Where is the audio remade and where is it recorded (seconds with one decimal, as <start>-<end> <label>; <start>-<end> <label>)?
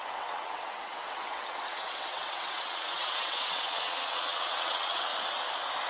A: 0.0-5.1 remade; 5.1-5.9 recorded